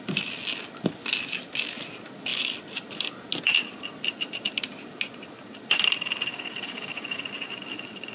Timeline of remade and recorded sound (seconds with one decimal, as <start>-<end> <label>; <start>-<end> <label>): 0.0-6.3 recorded; 6.3-7.2 remade; 7.2-8.1 recorded